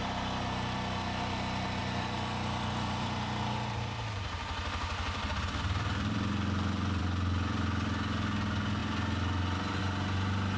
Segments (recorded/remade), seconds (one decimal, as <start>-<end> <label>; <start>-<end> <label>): 0.0-1.8 recorded; 1.8-7.0 remade; 7.0-10.6 recorded